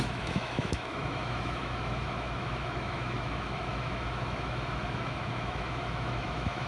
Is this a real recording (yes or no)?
no